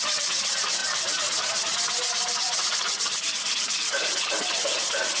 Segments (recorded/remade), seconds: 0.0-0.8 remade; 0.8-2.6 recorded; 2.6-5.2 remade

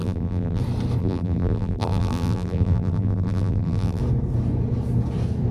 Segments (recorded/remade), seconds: 0.0-0.6 remade; 0.6-1.0 recorded; 1.0-4.0 remade; 4.0-5.5 recorded

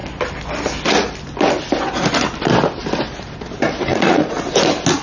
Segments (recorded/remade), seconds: 0.0-3.9 recorded; 3.9-4.5 remade; 4.5-5.0 recorded

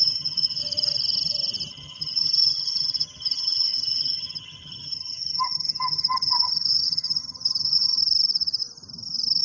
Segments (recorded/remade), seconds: 0.0-0.6 remade; 0.6-1.7 recorded; 1.7-8.0 remade; 8.0-9.4 recorded

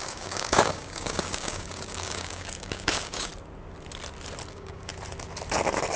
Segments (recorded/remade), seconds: 0.0-3.3 remade; 3.3-4.5 recorded; 4.5-4.9 remade; 4.9-6.0 recorded

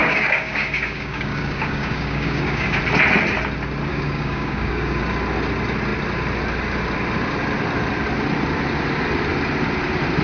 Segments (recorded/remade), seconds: 0.0-2.8 remade; 2.8-3.9 recorded; 3.9-5.0 remade; 5.0-10.2 recorded